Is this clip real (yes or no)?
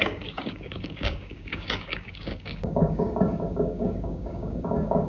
no